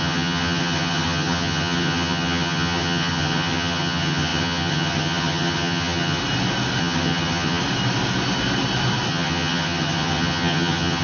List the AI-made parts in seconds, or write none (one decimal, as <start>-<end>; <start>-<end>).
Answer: 0.0-6.2; 6.8-7.6; 9.1-11.0